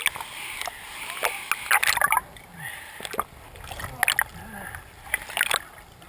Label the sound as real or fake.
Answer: real